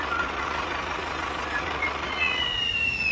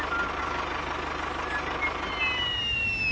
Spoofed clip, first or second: first